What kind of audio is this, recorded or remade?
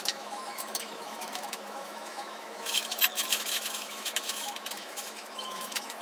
remade